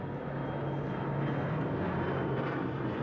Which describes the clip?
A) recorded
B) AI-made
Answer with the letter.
A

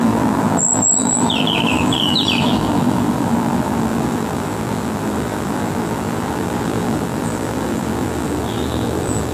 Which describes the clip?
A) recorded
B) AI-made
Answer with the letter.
B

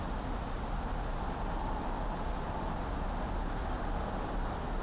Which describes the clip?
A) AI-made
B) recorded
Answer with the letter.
B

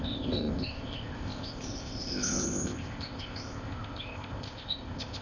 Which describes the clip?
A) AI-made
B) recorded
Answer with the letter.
A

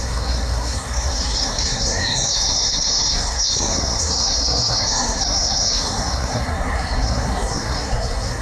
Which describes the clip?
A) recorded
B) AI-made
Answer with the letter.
B